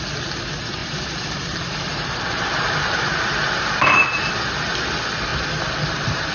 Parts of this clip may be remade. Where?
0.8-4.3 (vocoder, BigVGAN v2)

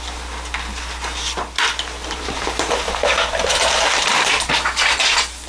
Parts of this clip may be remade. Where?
2.0-4.4 (vocoder, BigVGAN v2)